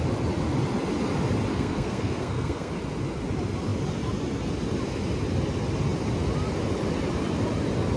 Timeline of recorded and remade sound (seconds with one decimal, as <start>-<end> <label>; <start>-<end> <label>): 0.0-1.5 recorded; 1.5-2.7 remade; 2.7-8.0 recorded